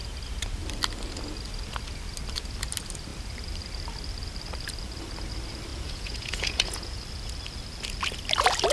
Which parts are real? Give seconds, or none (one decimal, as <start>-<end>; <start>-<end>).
0.0-5.7; 7.0-8.7